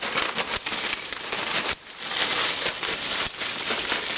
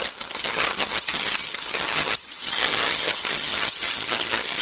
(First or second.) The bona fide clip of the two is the first